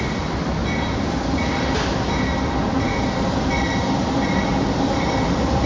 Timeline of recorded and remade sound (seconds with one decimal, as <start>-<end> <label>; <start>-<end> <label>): 0.0-0.6 remade; 0.6-4.0 recorded; 4.0-5.7 remade